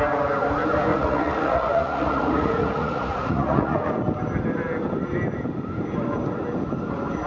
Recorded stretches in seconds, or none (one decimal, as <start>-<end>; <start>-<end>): 0.0-0.9; 3.9-7.3